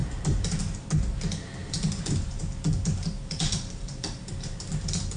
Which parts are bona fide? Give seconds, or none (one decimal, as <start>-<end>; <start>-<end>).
0.6-1.6; 2.4-3.0; 4.7-5.2

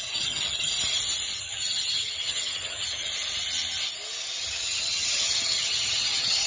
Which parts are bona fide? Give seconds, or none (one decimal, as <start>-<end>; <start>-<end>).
0.7-1.4; 3.1-4.4

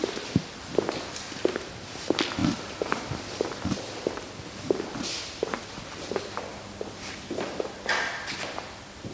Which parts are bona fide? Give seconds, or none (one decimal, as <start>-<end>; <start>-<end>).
0.0-2.4; 4.5-9.1

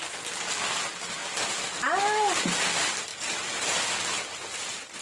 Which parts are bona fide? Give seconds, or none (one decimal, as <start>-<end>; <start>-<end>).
0.0-1.2; 1.7-3.1

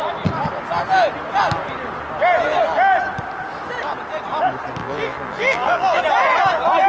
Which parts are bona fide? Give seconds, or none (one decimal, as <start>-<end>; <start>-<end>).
0.0-4.8; 6.0-6.9